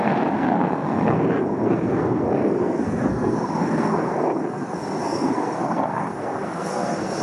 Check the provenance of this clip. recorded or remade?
remade